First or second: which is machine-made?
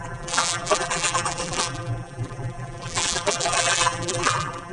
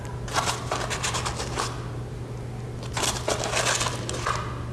first